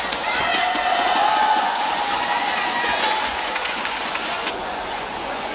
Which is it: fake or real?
fake